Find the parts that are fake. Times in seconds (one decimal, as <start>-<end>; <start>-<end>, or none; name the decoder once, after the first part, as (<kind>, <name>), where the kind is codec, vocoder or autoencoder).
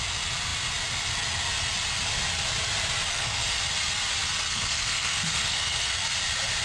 3.1-3.6 (codec, SNAC); 4.5-5.9